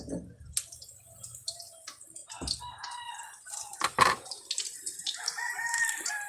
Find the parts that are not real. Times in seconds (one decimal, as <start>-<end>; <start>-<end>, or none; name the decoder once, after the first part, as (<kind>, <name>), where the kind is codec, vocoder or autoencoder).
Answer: 2.2-6.3 (vocoder, BigVGAN v2)